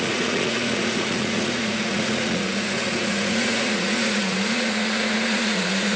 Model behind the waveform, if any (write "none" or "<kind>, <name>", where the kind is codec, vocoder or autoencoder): vocoder, Vocos